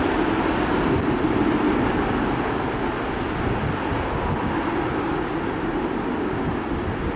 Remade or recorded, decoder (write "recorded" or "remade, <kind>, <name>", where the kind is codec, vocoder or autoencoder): recorded